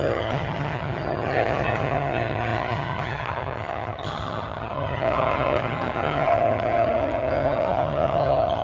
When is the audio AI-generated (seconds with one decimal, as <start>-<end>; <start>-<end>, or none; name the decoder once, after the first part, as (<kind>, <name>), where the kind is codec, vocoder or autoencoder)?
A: 0.0-8.6 (vocoder, HiFi-GAN)